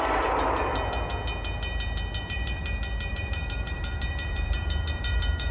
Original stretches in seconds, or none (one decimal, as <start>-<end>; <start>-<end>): 0.7-2.2; 2.6-3.1